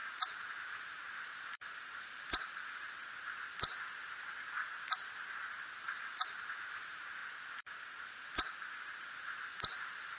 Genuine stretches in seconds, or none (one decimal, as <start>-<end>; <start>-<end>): 3.0-5.8; 7.2-9.0